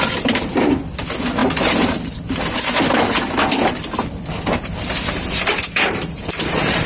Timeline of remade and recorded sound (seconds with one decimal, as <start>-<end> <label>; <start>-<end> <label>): 0.0-6.9 recorded